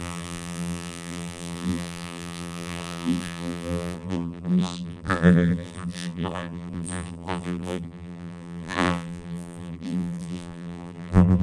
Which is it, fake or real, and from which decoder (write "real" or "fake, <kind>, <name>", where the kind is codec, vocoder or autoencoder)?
fake, vocoder, BigVGAN v2